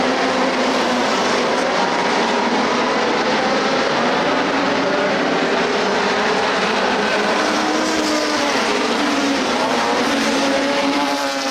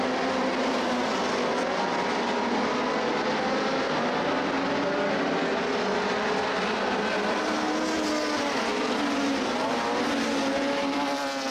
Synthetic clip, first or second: first